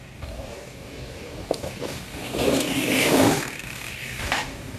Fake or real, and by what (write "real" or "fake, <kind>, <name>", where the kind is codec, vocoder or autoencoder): fake, codec, DAC